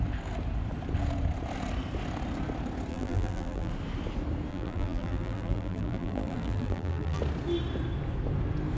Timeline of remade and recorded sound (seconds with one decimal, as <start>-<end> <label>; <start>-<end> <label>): 0.0-2.9 recorded; 2.9-3.7 remade; 3.7-4.5 recorded; 4.5-7.2 remade; 7.2-8.8 recorded